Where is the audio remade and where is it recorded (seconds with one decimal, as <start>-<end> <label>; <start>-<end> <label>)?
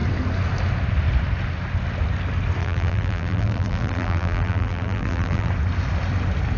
0.0-2.6 recorded; 2.6-5.5 remade; 5.5-6.6 recorded